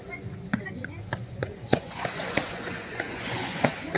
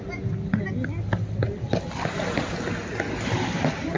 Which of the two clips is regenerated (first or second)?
first